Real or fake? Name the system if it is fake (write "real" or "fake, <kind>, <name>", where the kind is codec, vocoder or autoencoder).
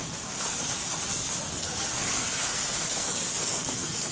fake, codec, SNAC